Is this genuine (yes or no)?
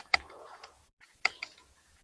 no